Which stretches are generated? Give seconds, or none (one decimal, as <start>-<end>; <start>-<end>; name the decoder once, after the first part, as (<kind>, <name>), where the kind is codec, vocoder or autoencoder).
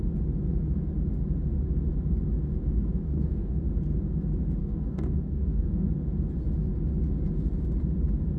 3.1-3.6 (codec, DAC); 4.6-5.9